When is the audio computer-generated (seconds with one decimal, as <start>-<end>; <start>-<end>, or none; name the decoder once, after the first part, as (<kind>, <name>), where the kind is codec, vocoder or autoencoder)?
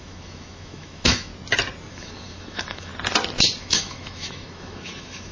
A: 0.0-1.3 (autoencoder, DAC-VAE); 1.9-2.9; 3.6-5.3